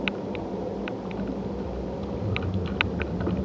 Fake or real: real